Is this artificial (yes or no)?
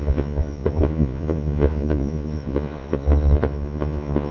yes